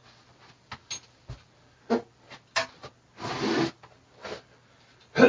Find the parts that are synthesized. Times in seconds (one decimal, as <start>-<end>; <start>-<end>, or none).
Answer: none